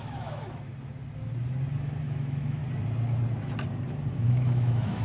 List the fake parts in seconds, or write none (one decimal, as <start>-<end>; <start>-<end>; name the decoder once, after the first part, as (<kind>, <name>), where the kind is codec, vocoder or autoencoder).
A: 0.0-0.7 (autoencoder, DAC-VAE); 2.0-2.6; 4.1-5.0